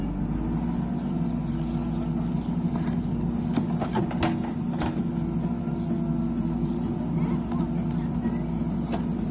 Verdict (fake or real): real